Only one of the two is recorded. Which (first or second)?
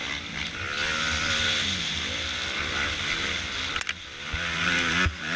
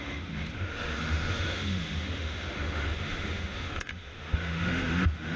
first